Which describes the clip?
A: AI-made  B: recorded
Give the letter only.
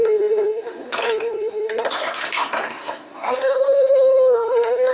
A